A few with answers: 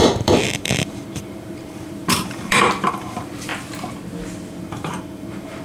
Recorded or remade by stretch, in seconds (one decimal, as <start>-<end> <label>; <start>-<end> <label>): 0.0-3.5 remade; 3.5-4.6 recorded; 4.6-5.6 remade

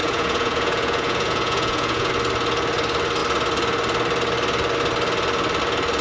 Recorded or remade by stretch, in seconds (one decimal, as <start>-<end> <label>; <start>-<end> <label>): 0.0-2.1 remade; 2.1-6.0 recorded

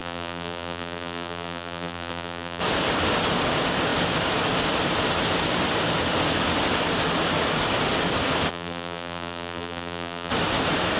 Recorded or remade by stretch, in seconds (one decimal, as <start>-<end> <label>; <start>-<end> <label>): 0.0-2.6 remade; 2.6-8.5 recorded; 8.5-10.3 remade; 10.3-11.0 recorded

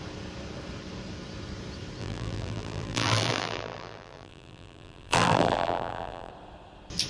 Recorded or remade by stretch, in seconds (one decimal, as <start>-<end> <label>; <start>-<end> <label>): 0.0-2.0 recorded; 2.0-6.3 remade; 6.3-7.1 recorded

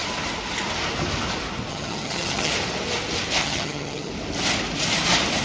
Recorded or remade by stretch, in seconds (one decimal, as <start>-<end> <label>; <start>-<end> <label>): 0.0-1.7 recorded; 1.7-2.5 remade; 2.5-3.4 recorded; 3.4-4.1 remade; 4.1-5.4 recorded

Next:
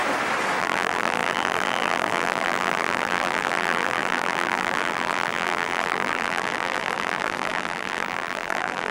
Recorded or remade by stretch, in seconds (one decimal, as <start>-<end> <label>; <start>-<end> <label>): 0.0-0.6 recorded; 0.6-8.9 remade